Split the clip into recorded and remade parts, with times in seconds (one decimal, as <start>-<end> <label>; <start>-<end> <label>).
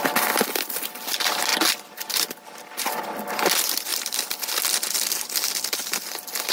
0.0-1.5 recorded; 1.5-3.3 remade; 3.3-3.9 recorded; 3.9-4.4 remade; 4.4-6.5 recorded